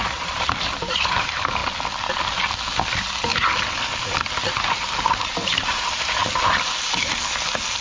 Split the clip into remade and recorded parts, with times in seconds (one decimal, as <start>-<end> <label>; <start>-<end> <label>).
0.0-1.6 remade; 1.6-2.9 recorded; 2.9-3.3 remade; 3.3-4.6 recorded; 4.6-6.2 remade; 6.2-7.8 recorded